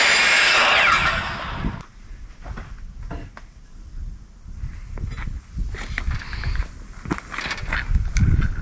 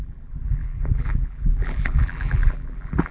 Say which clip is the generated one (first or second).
second